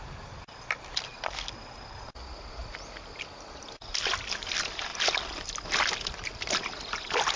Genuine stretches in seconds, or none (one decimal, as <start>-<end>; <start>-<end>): 0.0-7.4